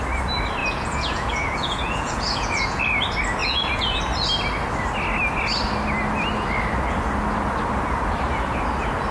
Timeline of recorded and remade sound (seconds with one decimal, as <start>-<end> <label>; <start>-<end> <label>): 0.0-0.6 recorded; 0.6-2.8 remade; 2.8-3.4 recorded; 3.4-4.0 remade; 4.0-9.1 recorded